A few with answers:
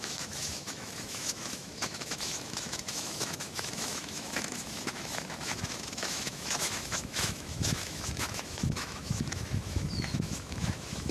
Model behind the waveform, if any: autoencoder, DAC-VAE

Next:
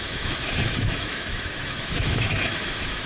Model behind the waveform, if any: autoencoder, DAC-VAE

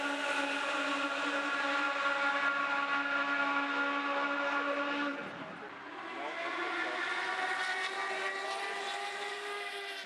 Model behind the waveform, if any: none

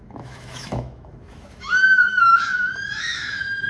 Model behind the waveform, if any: autoencoder, DAC-VAE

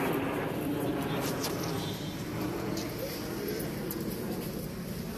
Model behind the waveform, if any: none